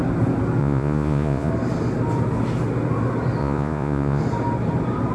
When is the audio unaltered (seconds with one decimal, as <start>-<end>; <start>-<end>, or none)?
0.0-0.6; 1.5-3.4; 4.2-5.1